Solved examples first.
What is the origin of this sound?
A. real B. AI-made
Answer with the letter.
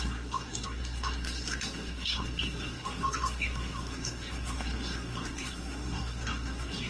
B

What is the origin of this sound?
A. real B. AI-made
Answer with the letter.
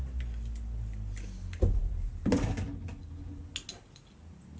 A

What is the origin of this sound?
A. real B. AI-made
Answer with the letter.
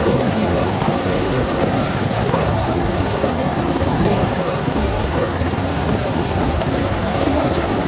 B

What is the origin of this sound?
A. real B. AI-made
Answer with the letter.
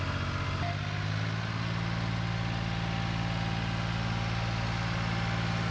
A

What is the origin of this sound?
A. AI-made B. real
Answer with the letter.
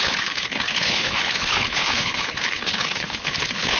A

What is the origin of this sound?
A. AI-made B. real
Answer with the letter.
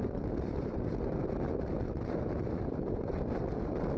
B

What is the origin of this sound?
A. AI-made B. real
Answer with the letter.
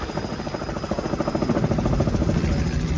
B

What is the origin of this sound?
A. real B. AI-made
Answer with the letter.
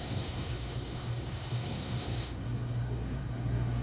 B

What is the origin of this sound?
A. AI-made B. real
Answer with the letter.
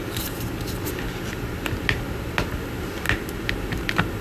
B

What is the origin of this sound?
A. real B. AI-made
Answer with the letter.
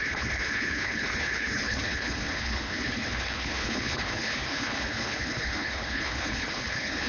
B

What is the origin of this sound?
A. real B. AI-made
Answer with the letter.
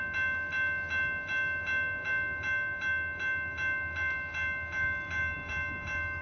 A